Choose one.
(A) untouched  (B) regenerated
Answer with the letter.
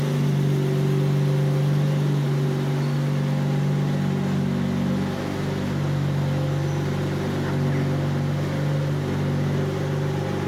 A